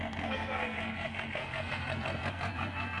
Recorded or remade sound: remade